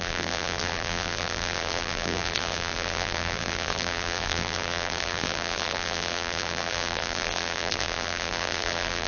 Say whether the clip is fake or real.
fake